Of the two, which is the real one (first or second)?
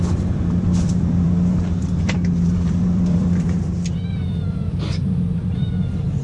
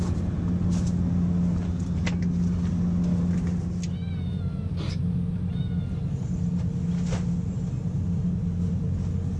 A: second